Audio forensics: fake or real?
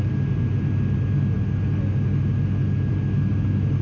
real